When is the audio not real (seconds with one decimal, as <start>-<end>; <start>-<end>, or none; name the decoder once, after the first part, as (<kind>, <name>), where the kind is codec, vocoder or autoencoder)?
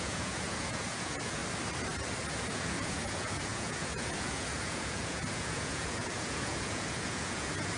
0.0-1.4 (vocoder, Vocos); 2.3-7.8